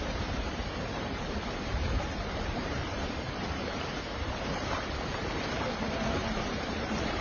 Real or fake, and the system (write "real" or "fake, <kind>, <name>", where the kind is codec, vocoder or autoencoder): fake, vocoder, BigVGAN v2